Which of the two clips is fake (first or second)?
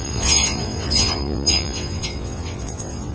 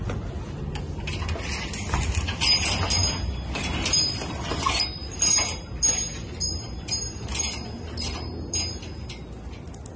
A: first